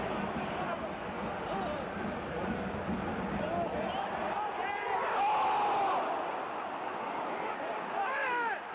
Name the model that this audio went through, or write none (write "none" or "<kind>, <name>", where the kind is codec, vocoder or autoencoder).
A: none